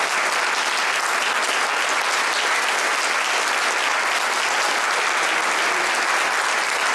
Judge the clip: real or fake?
real